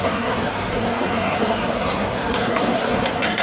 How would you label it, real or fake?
fake